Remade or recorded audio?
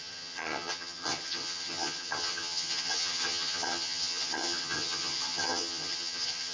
remade